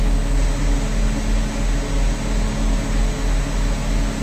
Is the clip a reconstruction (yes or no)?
no